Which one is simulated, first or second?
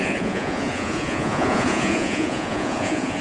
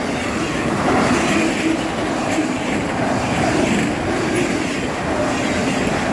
first